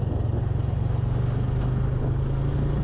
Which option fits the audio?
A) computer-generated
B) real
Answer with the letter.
B